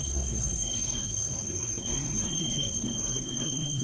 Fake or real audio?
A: fake